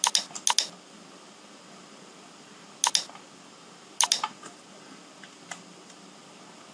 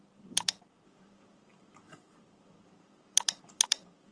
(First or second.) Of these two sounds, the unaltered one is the first